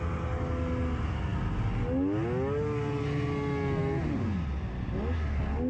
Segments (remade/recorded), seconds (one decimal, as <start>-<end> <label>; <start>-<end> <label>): 0.0-5.7 recorded